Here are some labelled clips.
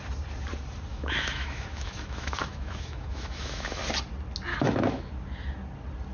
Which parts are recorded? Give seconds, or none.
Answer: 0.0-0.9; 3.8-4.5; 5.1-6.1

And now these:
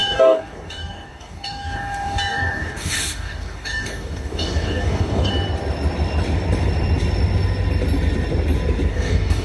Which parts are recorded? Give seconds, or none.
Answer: 5.3-8.9